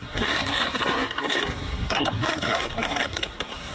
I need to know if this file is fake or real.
fake